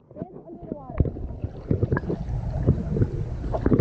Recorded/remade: recorded